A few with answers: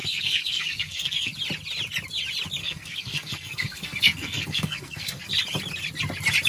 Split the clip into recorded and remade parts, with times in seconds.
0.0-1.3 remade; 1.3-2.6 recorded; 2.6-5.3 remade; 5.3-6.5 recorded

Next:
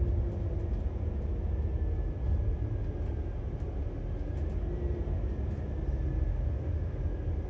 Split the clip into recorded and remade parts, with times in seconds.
0.0-6.3 recorded; 6.3-7.0 remade; 7.0-7.5 recorded

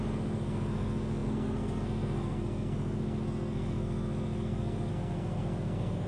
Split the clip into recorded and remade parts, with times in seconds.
0.0-6.1 remade